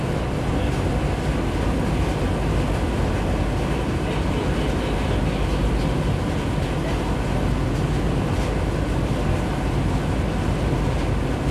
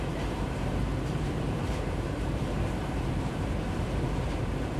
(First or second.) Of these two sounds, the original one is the first